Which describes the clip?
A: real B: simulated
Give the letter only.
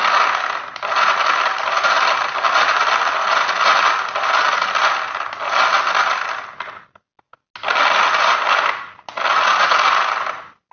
A